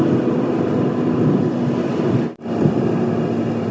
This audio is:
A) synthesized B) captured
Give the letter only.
B